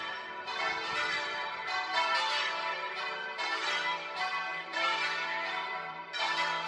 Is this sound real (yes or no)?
no